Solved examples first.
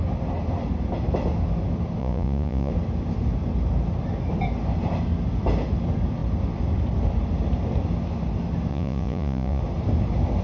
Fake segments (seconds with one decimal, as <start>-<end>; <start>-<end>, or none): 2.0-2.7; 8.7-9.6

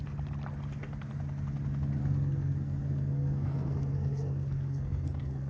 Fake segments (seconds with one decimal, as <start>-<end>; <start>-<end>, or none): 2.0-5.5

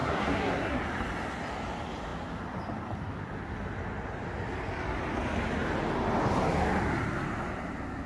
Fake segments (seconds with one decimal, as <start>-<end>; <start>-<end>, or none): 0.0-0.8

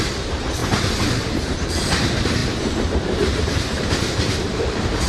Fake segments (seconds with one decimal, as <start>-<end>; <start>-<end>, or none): 0.0-5.1

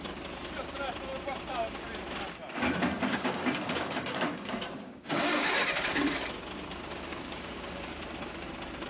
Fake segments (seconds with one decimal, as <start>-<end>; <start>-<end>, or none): 3.1-5.5; 7.1-8.0

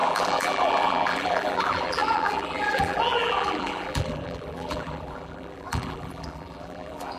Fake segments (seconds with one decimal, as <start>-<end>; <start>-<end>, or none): 0.0-7.2

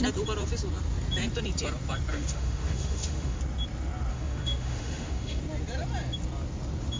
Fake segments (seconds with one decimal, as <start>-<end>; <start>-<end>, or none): 2.1-3.4; 4.1-5.4